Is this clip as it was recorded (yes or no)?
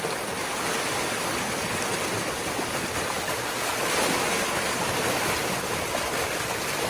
yes